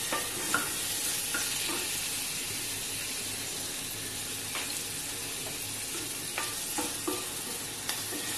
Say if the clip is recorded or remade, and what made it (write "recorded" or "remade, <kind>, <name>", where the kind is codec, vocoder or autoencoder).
recorded